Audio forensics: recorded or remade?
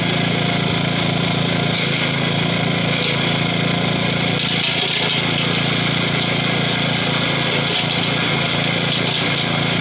recorded